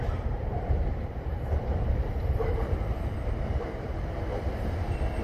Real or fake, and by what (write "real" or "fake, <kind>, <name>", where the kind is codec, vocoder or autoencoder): fake, vocoder, BigVGAN v2